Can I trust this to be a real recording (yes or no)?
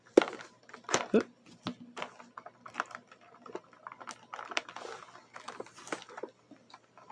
yes